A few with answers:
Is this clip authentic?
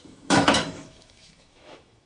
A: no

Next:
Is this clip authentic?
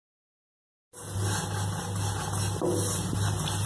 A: yes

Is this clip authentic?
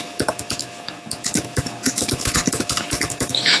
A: no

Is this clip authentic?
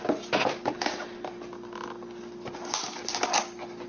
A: yes